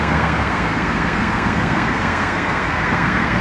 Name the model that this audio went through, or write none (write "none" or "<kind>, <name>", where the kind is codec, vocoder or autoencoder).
codec, SNAC